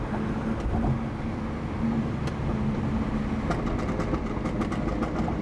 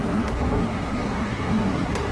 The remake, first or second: second